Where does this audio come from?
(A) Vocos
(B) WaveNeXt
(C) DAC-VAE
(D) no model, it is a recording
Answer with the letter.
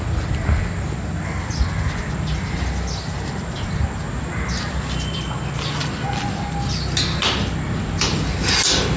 D